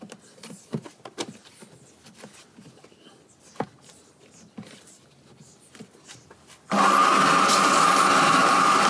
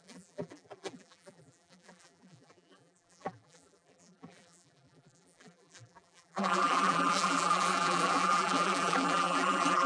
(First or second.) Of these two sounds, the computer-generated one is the second